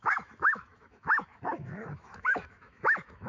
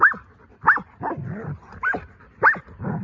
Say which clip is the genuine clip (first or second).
second